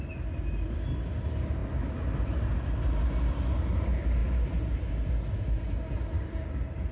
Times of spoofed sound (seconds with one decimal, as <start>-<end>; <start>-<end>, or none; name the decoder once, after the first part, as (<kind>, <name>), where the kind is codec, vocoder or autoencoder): none